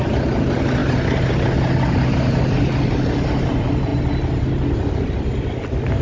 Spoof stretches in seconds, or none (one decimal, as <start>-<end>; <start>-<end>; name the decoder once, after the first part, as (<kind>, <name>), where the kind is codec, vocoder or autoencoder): none